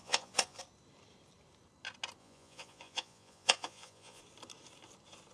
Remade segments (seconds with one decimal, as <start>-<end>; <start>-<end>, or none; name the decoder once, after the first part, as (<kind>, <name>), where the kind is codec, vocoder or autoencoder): 0.0-0.6 (vocoder, Vocos); 2.2-4.2